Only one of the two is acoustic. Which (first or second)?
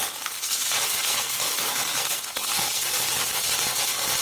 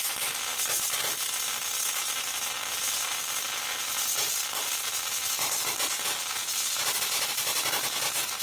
second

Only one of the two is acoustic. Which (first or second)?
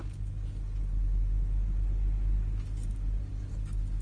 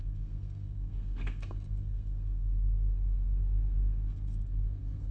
first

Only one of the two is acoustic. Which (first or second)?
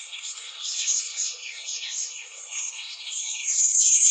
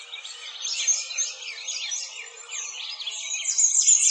second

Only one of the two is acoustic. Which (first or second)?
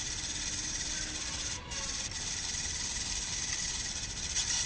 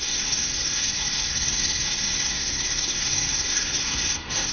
first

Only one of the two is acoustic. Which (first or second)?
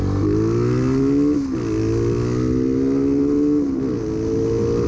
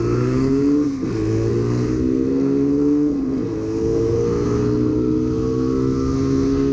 first